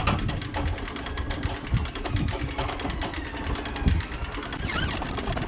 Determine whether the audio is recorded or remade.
recorded